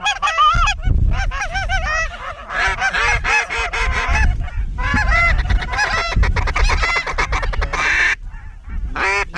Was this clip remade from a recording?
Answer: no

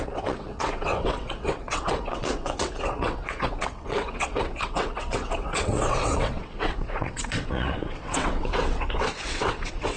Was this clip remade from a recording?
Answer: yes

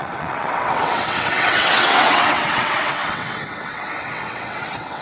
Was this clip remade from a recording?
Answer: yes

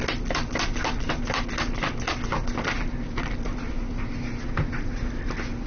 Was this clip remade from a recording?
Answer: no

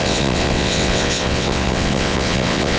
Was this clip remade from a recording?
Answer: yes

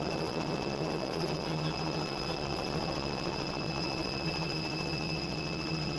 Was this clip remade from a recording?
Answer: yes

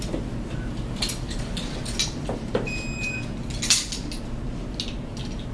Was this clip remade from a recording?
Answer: no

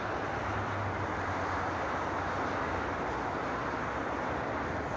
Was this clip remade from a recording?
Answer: no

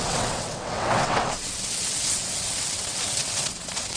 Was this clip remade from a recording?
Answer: yes